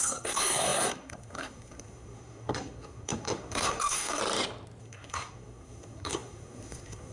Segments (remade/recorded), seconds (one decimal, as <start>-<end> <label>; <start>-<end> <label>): 0.0-4.2 remade; 4.2-4.8 recorded; 4.8-7.1 remade